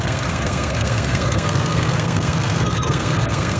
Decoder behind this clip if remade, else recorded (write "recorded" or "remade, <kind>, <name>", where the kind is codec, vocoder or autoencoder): remade, codec, SNAC